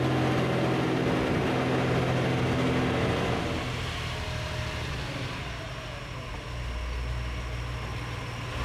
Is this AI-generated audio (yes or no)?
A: no